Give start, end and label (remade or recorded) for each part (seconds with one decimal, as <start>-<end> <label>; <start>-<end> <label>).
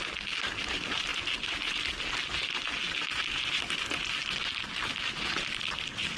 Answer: 0.0-6.2 recorded